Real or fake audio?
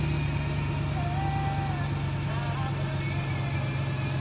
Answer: real